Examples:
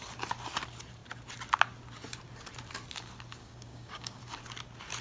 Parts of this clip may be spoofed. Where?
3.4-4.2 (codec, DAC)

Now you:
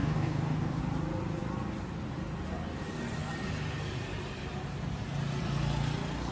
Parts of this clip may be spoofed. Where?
0.0-0.8 (codec, DAC)

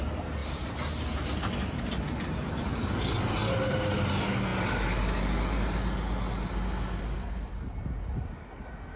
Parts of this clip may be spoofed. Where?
none

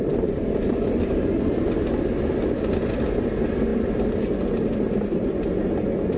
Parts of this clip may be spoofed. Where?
none